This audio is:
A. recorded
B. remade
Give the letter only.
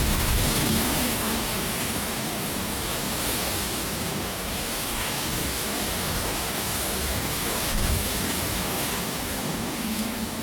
B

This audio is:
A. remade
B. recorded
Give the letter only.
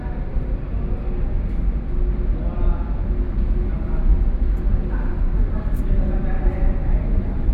B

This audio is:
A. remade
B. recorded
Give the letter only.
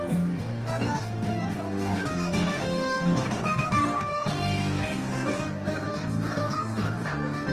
A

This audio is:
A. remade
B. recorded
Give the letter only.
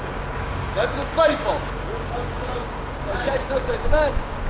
A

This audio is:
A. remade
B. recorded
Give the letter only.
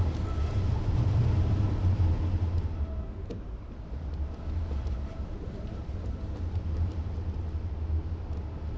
B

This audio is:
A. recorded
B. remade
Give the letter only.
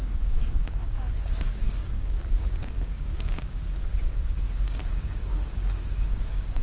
B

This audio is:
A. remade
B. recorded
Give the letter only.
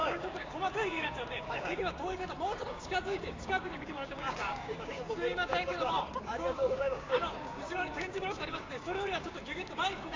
A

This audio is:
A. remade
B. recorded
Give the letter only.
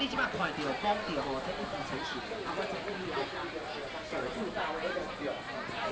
B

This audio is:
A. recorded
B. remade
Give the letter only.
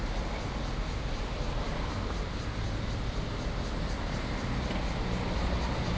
A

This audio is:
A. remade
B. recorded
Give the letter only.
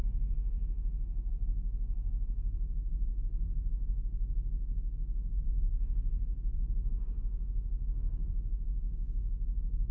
A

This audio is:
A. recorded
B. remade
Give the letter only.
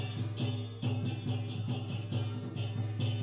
A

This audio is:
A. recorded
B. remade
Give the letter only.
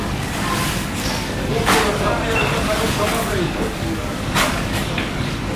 B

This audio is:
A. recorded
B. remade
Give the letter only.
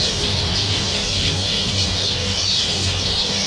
B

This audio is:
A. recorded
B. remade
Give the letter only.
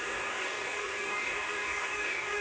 B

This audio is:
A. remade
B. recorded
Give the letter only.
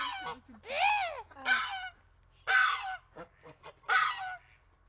B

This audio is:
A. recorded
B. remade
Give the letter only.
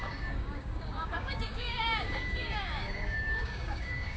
B